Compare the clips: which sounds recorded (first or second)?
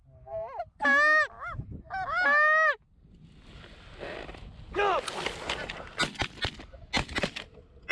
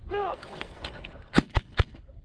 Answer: first